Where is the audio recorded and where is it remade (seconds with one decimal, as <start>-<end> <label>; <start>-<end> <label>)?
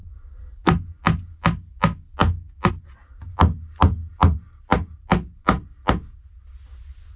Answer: 0.0-7.2 recorded